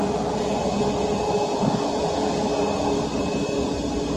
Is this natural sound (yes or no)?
yes